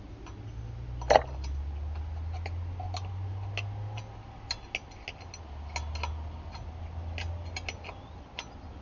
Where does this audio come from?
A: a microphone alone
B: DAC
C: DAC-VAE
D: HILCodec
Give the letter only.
A